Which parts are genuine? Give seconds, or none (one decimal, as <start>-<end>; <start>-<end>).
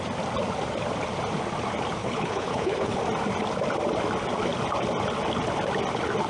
0.0-2.0; 3.0-6.3